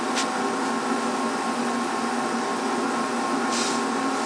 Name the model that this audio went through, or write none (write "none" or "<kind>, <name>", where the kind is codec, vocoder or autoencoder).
none